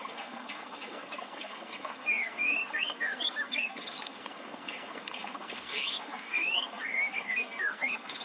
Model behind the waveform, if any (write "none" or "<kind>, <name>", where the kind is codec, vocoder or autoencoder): codec, SNAC